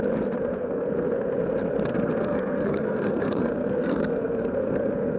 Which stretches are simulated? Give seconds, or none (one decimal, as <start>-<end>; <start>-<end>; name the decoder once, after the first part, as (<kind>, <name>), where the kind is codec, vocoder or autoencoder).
0.4-1.4 (codec, SNAC); 1.9-5.2